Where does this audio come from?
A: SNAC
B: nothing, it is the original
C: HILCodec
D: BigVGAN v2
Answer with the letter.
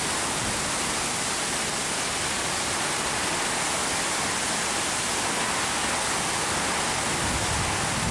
B